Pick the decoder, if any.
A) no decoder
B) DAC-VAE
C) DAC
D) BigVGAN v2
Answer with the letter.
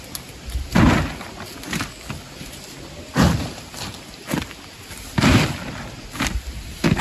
A